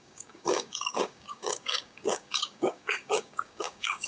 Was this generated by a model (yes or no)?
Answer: yes